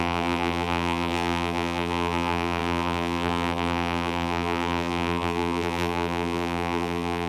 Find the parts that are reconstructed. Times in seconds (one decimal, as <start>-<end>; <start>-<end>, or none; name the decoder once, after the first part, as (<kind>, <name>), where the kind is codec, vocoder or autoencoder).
0.0-7.3 (vocoder, BigVGAN v2)